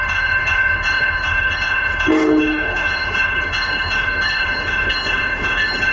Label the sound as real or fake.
fake